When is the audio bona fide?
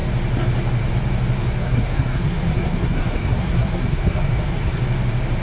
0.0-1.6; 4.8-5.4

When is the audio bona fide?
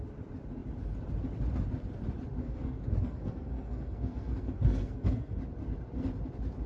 0.0-2.4; 5.4-6.7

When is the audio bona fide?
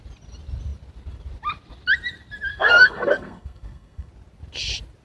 0.0-2.5; 4.1-5.0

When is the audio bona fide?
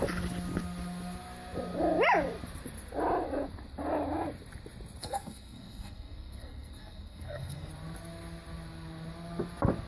0.0-5.0; 7.7-9.9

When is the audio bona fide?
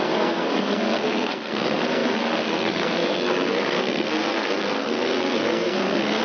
none